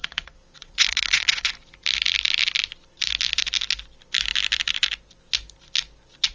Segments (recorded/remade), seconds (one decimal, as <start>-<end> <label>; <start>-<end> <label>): 0.0-1.5 remade; 1.5-6.3 recorded